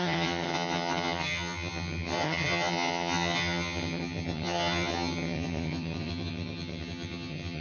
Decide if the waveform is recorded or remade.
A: remade